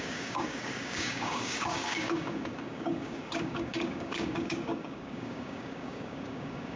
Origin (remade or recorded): remade